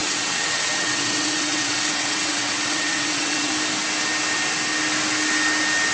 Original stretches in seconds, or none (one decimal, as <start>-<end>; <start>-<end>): 3.5-5.9